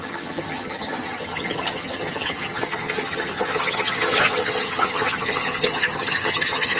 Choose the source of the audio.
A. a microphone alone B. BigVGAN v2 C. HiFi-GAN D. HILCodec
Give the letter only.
C